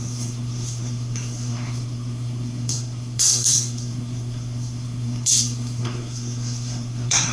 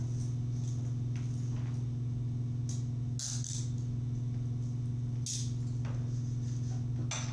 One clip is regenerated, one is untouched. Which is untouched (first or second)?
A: second